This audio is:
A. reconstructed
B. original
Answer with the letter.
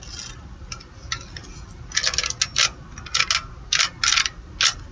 B